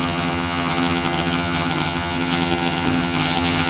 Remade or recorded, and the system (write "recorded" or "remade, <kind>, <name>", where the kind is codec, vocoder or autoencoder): remade, vocoder, HiFi-GAN